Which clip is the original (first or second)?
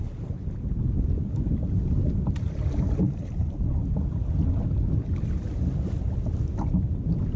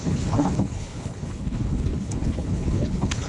first